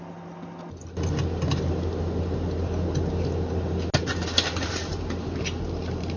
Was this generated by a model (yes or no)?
no